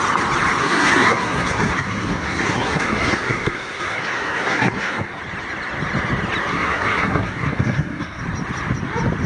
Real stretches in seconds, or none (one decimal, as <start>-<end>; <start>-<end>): 0.0-0.6; 5.2-6.5; 8.2-9.3